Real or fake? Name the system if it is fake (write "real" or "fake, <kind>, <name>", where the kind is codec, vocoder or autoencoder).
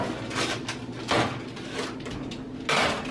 real